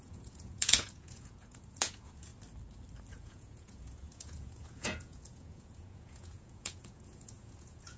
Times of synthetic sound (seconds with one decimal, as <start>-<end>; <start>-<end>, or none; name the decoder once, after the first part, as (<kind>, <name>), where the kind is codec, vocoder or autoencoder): 0.0-2.3 (vocoder, Vocos); 3.1-8.0